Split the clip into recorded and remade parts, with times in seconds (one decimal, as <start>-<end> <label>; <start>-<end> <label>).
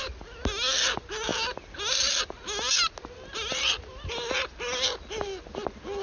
0.0-6.0 recorded